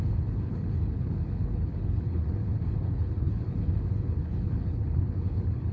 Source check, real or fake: fake